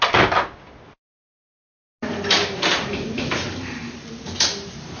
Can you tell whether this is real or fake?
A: real